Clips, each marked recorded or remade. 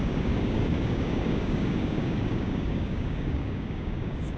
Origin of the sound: remade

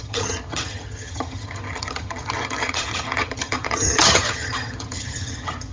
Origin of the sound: remade